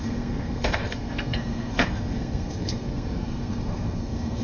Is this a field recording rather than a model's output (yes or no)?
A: no